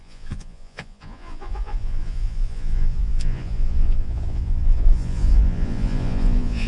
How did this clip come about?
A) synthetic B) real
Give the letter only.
A